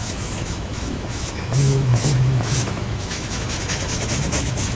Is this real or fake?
fake